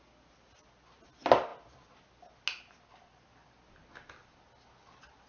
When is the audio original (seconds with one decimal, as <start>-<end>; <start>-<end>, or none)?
0.0-5.3